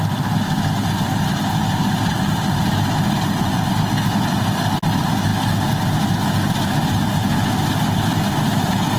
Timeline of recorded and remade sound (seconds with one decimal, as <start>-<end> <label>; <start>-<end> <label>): 0.0-9.0 recorded